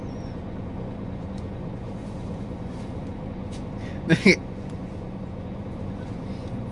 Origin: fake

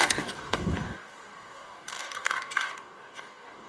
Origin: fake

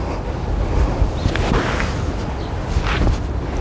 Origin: real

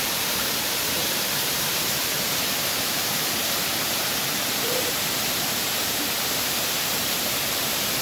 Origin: fake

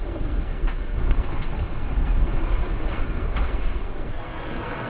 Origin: fake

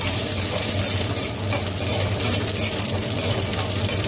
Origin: real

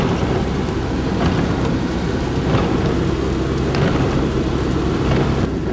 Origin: real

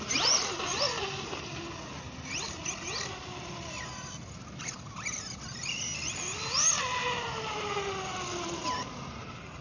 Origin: real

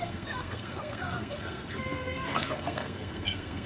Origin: fake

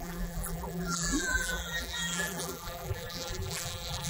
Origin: fake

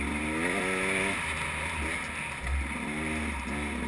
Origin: real